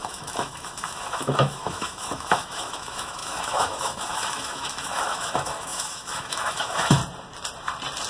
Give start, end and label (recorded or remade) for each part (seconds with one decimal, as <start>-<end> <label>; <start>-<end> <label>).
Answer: 0.0-7.0 remade; 7.0-8.1 recorded